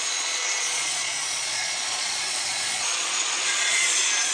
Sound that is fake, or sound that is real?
fake